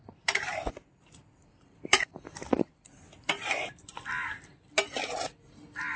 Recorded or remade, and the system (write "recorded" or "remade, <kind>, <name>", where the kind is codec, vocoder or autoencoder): remade, vocoder, BigVGAN v2